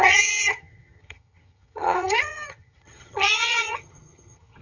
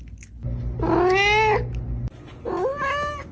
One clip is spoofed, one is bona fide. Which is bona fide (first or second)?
second